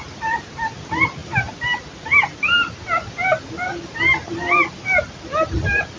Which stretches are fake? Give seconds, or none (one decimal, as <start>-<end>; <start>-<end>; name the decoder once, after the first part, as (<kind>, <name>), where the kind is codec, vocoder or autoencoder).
none